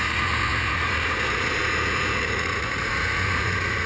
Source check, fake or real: fake